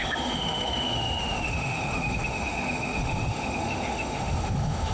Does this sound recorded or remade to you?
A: remade